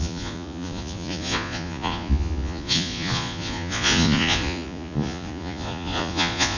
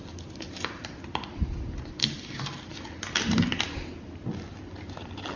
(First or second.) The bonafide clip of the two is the second